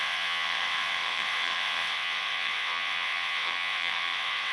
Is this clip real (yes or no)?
no